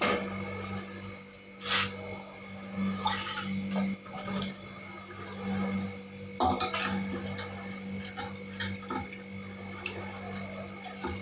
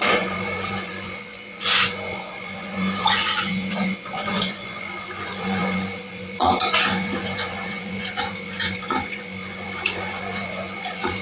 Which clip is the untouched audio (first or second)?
first